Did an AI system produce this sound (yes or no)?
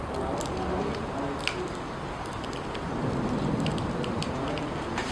no